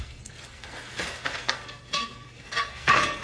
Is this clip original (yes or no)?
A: no